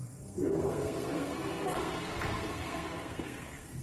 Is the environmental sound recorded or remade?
remade